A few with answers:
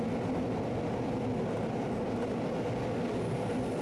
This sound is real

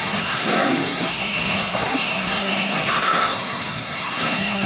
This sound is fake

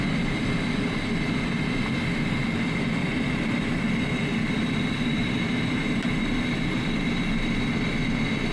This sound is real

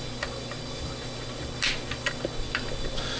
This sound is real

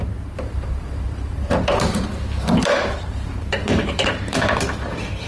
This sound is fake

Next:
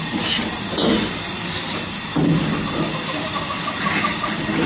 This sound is real